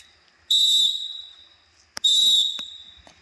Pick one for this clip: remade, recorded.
recorded